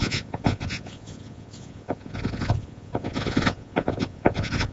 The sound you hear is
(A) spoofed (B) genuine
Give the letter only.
A